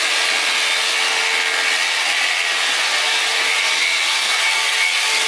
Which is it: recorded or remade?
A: recorded